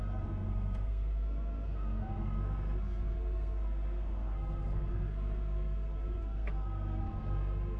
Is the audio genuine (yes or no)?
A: no